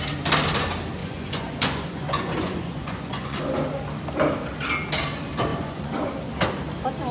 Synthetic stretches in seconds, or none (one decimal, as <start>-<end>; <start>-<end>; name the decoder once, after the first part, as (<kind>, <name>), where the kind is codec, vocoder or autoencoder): 1.0-3.4 (vocoder, Vocos); 5.5-6.1